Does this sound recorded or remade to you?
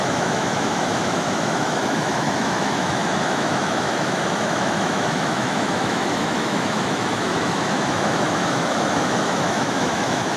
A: remade